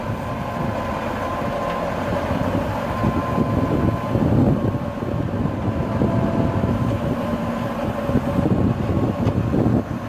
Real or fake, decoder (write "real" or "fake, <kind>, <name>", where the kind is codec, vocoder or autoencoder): real